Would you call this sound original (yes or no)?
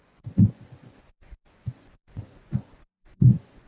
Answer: no